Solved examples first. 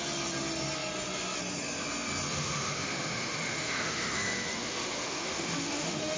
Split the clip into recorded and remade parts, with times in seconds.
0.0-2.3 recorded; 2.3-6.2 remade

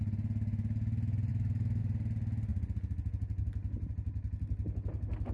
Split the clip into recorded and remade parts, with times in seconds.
0.0-1.3 recorded; 1.3-1.8 remade; 1.8-5.3 recorded

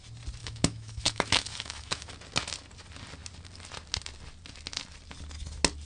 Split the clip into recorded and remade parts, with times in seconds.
0.0-0.4 recorded; 0.4-2.1 remade; 2.1-5.9 recorded

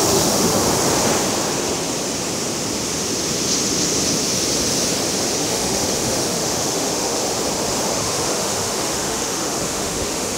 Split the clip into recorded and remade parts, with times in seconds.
0.0-0.6 remade; 0.6-5.4 recorded; 5.4-7.2 remade; 7.2-7.9 recorded; 7.9-10.4 remade

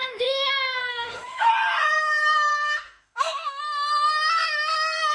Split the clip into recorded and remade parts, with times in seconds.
0.0-0.5 remade; 0.5-0.9 recorded; 0.9-1.5 remade; 1.5-2.5 recorded; 2.5-3.6 remade; 3.6-5.1 recorded

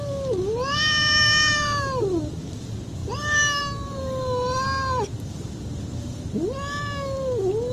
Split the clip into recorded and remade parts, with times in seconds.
0.0-7.7 recorded

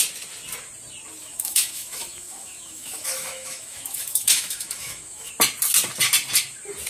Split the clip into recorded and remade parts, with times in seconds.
0.0-1.2 recorded; 1.2-5.3 remade; 5.3-6.9 recorded